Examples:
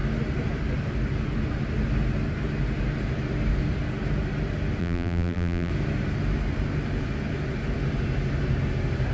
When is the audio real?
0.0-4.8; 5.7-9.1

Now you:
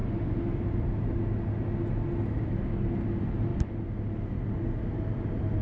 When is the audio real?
0.0-5.6

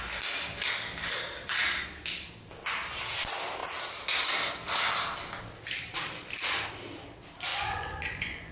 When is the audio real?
0.0-7.5

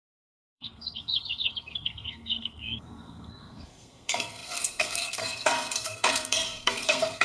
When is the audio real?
none

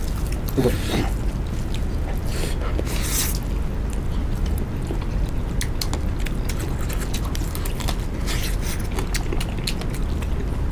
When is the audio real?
0.0-10.7

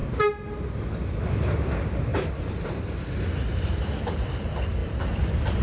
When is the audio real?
0.0-0.6; 2.1-3.5

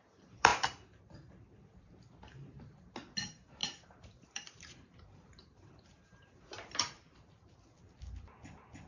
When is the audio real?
0.0-0.5; 1.3-3.6; 7.3-8.9

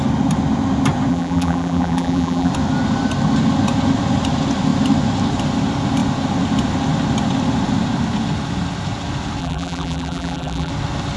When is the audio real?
0.0-1.1; 2.5-9.4; 10.7-11.2